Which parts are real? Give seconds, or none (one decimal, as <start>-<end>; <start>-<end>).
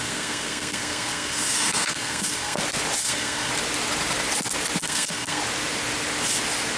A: 2.6-3.0; 3.5-4.8; 5.4-6.8